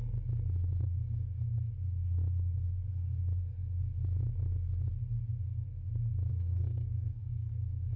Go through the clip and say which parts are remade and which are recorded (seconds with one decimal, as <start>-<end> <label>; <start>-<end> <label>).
0.0-6.3 recorded; 6.3-7.5 remade; 7.5-8.0 recorded